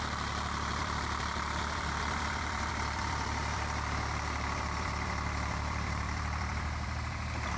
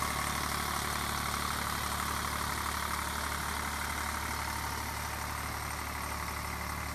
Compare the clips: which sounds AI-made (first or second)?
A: first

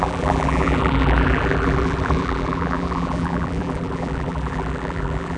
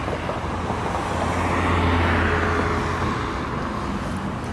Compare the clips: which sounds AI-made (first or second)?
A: first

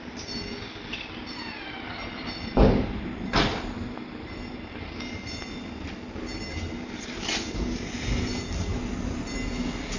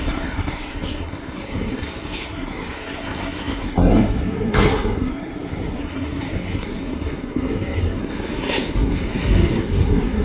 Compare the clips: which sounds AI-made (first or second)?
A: second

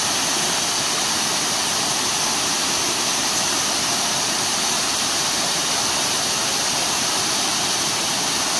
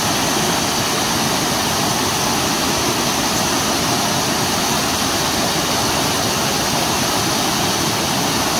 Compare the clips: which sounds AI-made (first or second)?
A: first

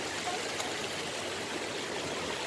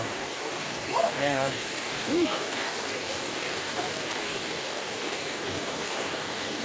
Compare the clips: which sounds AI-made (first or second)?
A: second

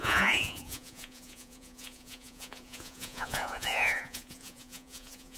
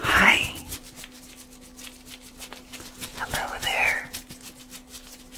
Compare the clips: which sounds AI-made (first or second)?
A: first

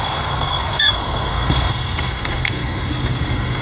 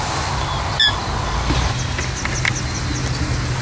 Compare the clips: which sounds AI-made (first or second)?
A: first